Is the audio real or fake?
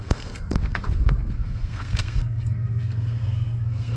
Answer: fake